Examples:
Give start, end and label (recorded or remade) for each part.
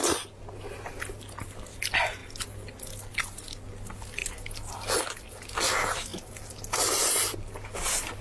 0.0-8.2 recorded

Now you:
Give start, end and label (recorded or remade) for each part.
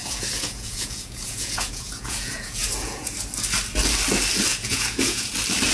0.0-3.1 remade; 3.1-4.5 recorded; 4.5-5.3 remade; 5.3-5.7 recorded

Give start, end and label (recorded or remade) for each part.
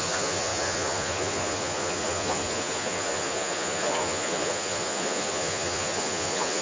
0.0-6.6 remade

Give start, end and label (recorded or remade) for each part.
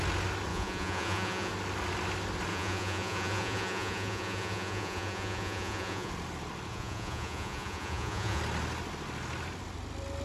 0.0-0.5 recorded; 0.5-1.5 remade; 1.5-2.5 recorded; 2.5-6.1 remade; 6.1-6.7 recorded; 6.7-8.4 remade; 8.4-10.2 recorded